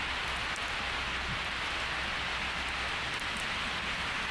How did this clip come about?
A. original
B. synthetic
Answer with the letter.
A